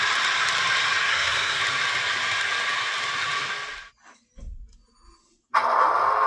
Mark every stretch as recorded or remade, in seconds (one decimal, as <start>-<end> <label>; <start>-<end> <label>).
0.0-1.1 recorded; 1.1-1.6 remade; 1.6-6.3 recorded